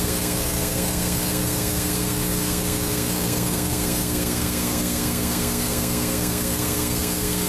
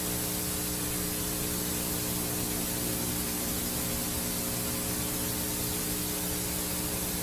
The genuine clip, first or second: second